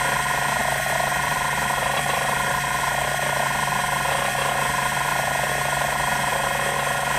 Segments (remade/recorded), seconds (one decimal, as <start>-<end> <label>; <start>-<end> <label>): 0.0-0.6 recorded; 0.6-2.5 remade; 2.5-7.2 recorded